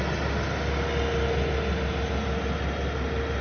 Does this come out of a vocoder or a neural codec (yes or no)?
no